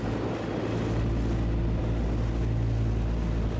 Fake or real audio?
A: real